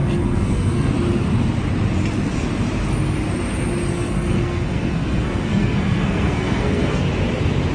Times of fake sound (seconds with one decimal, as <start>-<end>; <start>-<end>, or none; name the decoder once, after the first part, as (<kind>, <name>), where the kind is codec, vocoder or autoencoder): 0.0-0.9 (codec, SNAC); 3.9-7.0